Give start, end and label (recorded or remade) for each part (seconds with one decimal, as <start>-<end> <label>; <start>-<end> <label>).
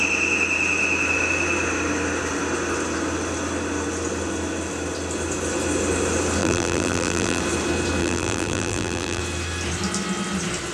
0.0-6.4 recorded; 6.4-7.4 remade; 7.4-8.0 recorded; 8.0-9.2 remade; 9.2-10.7 recorded